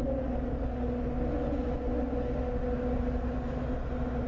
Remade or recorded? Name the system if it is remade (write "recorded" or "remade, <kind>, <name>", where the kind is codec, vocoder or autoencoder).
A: recorded